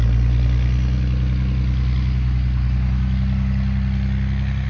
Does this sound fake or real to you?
real